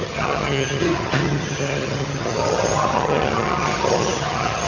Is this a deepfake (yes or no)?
yes